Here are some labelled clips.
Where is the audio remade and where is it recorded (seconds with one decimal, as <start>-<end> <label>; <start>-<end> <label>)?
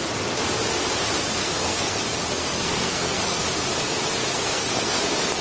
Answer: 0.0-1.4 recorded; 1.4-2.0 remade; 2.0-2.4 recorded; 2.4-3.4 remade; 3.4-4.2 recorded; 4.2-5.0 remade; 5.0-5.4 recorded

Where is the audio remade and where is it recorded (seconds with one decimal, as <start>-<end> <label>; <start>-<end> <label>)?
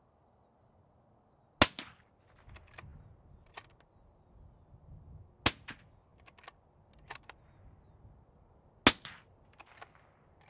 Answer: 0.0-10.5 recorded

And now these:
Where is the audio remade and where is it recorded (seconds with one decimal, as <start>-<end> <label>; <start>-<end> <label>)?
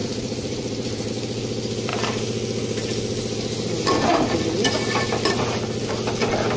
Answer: 0.0-1.1 remade; 1.1-6.6 recorded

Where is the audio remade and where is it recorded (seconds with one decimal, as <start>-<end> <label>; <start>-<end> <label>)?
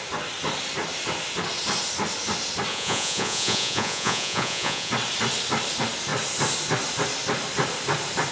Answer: 0.0-2.7 recorded; 2.7-4.9 remade; 4.9-8.3 recorded